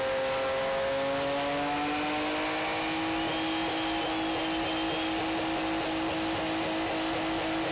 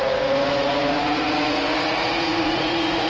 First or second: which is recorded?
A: first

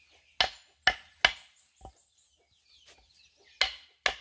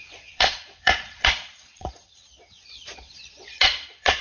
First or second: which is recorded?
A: first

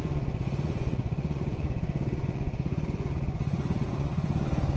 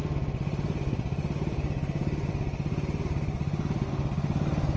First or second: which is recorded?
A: second